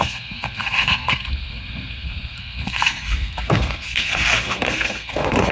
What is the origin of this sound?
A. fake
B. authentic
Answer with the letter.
A